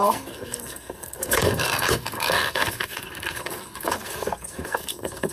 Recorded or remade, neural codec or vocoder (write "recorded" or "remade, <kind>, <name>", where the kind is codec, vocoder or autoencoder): remade, codec, SNAC